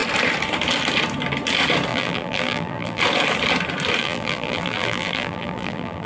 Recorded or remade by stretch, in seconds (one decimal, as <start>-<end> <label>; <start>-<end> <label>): 0.0-1.9 recorded; 1.9-3.0 remade; 3.0-4.0 recorded; 4.0-6.1 remade